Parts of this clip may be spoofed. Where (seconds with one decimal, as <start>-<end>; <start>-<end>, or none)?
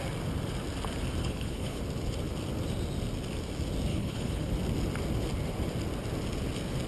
1.2-1.8; 3.9-4.5